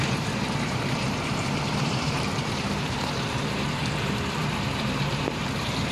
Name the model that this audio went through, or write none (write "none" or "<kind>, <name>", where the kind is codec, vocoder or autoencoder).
vocoder, BigVGAN v2